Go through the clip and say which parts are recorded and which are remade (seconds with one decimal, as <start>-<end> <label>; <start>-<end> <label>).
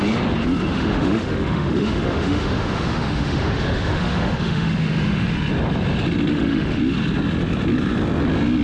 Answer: 0.0-0.7 recorded; 0.7-5.3 remade; 5.3-6.3 recorded; 6.3-6.8 remade; 6.8-8.6 recorded